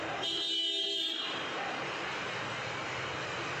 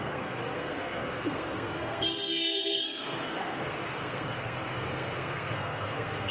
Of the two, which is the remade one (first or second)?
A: second